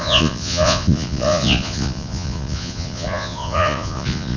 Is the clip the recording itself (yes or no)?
no